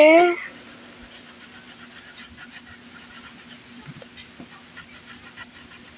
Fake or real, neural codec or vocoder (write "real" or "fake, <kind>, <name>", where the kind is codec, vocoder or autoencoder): real